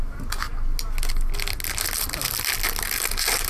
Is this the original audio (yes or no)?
yes